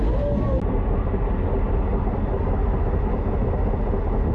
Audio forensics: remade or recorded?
recorded